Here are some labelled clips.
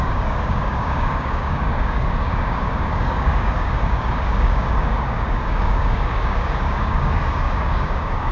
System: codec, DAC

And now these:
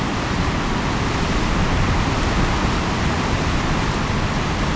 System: none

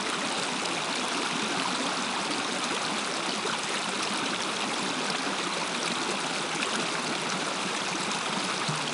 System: none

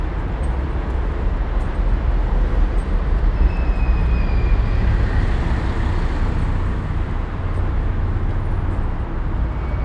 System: none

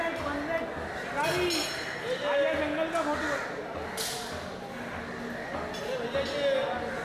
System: none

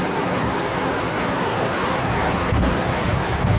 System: codec, SNAC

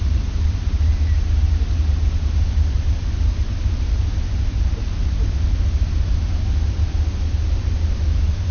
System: none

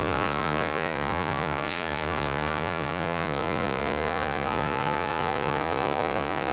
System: vocoder, Vocos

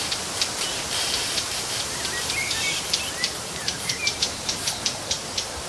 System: vocoder, BigVGAN v2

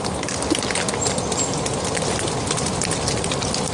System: none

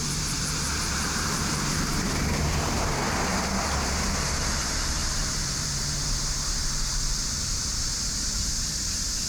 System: vocoder, BigVGAN v2